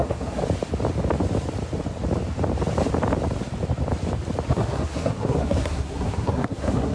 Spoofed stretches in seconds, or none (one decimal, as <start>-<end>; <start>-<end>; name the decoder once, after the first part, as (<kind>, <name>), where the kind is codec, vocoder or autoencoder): 0.0-0.4 (codec, SNAC); 4.5-6.9